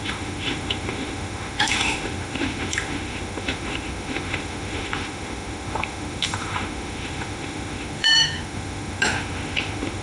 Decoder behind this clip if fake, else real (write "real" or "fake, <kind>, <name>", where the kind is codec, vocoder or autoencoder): fake, autoencoder, DAC-VAE